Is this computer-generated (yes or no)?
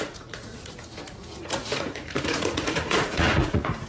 yes